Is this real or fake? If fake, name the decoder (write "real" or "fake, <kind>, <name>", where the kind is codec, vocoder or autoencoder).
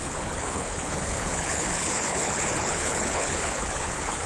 fake, codec, HILCodec